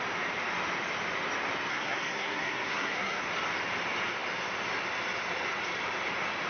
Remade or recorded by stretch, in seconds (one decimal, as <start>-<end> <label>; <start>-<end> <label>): 0.0-1.7 recorded; 1.7-3.3 remade; 3.3-6.5 recorded